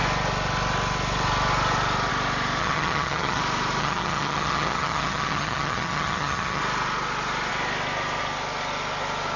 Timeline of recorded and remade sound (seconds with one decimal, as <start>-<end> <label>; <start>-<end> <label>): 0.0-2.6 recorded; 2.6-3.4 remade; 3.4-3.8 recorded; 3.8-6.6 remade; 6.6-9.4 recorded

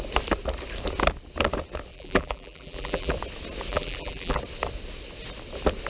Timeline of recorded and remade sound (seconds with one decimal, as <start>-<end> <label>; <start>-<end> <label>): 0.0-1.9 recorded; 1.9-3.1 remade; 3.1-3.7 recorded; 3.7-4.4 remade; 4.4-5.9 recorded

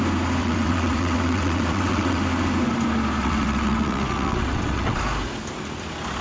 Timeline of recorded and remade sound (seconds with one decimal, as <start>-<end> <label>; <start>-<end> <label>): 0.0-0.4 recorded; 0.4-2.2 remade; 2.2-3.2 recorded; 3.2-5.0 remade; 5.0-6.2 recorded

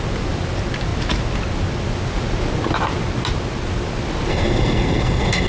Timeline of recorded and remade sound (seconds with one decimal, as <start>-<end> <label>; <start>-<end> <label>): 0.0-4.3 recorded; 4.3-5.5 remade

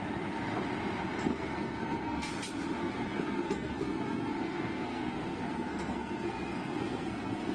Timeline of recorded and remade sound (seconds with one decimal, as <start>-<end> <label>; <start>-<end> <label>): 0.0-1.3 recorded; 1.3-2.3 remade; 2.3-2.8 recorded; 2.8-7.5 remade

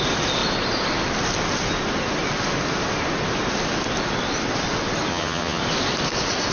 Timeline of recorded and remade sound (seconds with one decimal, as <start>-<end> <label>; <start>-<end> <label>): 0.0-5.1 recorded; 5.1-5.6 remade; 5.6-6.5 recorded

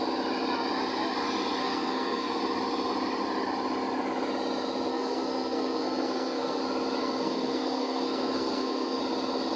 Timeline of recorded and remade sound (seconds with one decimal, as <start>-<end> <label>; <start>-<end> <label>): 0.0-1.6 recorded; 1.6-2.4 remade; 2.4-4.9 recorded; 4.9-6.6 remade; 6.6-7.0 recorded; 7.0-9.0 remade; 9.0-9.6 recorded